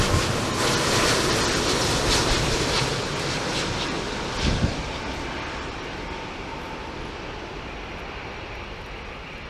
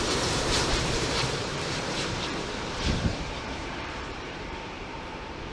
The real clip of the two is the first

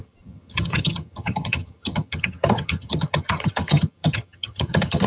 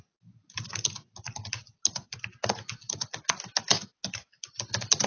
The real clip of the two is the second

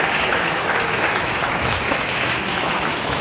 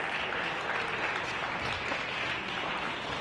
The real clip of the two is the second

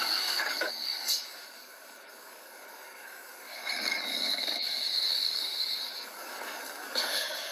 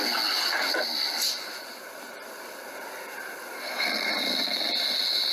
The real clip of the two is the second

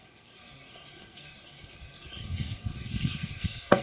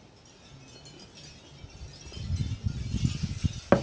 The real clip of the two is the second